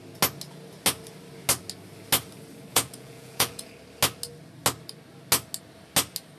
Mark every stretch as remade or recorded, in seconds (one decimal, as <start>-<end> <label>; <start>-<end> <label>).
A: 0.0-2.7 recorded; 2.7-3.7 remade; 3.7-6.4 recorded